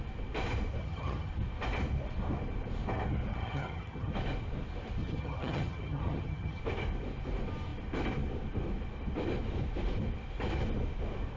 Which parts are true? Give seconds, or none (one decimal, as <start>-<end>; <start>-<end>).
0.0-0.8; 1.3-3.3; 4.1-5.0; 6.6-11.4